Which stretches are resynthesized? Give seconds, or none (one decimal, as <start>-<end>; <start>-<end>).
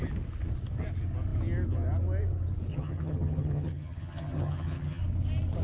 2.7-5.0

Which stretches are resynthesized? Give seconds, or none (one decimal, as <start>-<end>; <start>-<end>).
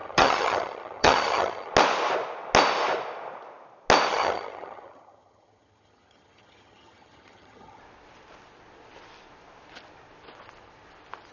0.0-1.7; 4.1-7.8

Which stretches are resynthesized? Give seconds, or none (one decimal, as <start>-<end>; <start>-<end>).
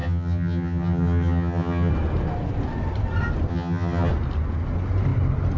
0.0-1.9; 3.5-4.1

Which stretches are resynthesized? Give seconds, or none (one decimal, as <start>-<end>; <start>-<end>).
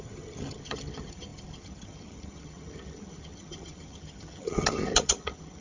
0.0-5.6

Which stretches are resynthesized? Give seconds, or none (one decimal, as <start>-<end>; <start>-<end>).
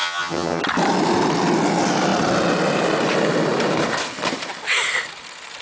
0.0-0.6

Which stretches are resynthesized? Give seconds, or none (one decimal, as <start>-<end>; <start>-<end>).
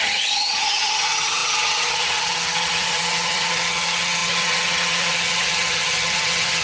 0.0-6.6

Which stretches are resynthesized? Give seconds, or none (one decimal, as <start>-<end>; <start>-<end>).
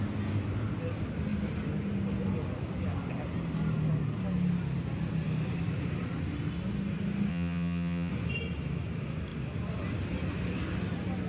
7.3-8.1